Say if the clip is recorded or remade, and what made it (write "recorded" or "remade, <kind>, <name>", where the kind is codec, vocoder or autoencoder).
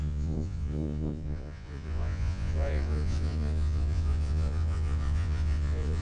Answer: remade, vocoder, Vocos